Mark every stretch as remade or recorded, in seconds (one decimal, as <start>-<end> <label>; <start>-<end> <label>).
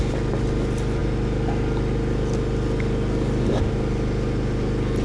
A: 0.0-5.0 recorded